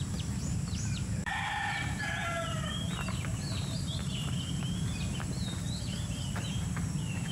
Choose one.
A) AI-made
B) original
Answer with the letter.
A